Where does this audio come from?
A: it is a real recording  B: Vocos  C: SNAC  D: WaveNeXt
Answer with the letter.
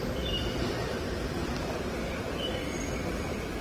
A